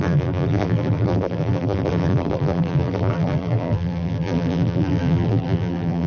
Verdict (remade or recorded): remade